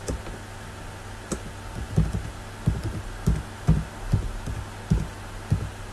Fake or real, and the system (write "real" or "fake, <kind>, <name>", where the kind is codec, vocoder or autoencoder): real